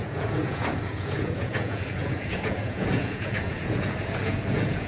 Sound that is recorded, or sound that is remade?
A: remade